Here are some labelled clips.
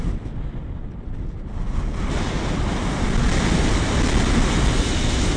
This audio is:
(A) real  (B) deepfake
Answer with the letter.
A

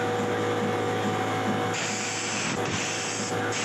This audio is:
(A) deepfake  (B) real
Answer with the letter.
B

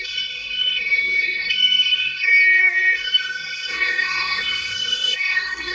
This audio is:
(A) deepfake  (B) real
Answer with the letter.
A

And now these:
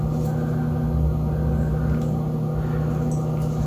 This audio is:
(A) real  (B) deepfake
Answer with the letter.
A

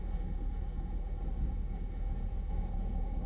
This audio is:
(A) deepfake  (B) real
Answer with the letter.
A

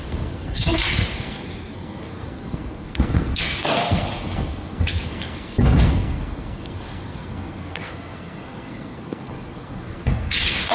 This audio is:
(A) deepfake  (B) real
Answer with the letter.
A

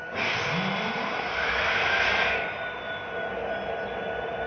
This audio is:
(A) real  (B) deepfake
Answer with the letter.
A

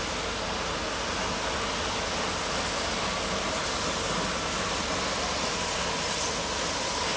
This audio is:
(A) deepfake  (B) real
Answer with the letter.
B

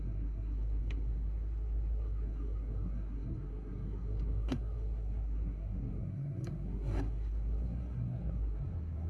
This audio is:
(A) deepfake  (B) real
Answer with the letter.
A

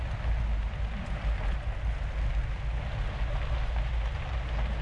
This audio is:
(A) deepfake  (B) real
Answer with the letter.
B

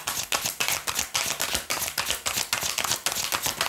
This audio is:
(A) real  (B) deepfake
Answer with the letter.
A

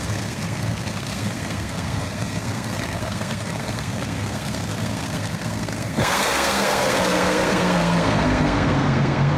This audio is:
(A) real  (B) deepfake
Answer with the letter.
B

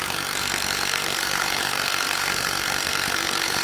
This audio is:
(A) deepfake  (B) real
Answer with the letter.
A